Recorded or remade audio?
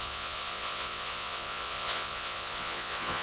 remade